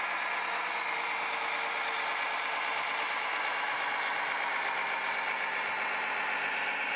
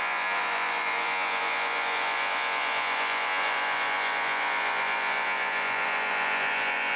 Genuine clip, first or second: first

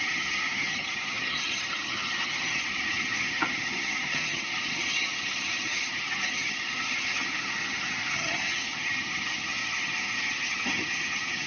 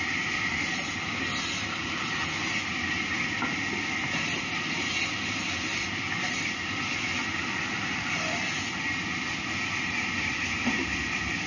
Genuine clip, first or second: second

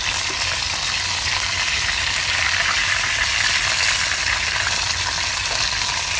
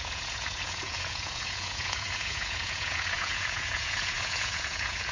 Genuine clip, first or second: first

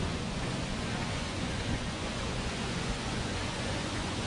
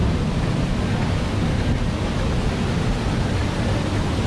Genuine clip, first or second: second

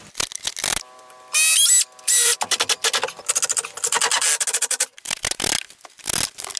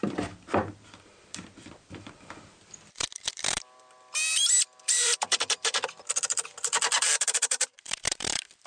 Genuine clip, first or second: first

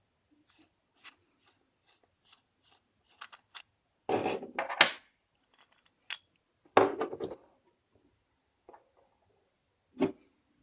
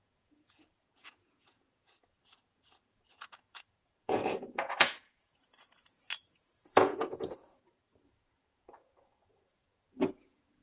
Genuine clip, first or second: first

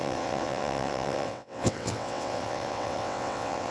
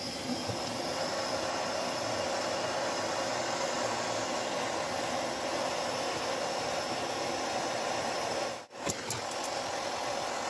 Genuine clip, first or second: second